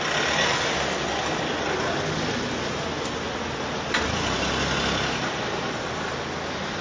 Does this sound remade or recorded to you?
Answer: recorded